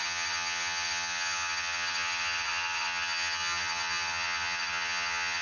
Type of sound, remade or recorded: remade